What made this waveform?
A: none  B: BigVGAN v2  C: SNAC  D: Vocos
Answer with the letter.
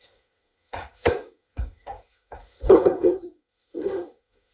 C